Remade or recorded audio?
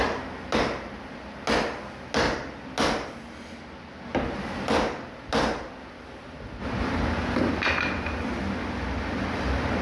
recorded